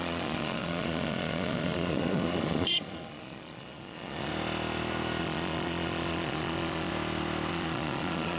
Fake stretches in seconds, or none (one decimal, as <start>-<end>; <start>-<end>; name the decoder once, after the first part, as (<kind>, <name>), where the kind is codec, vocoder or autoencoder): 0.0-4.3 (vocoder, Vocos); 5.2-6.9; 7.5-8.4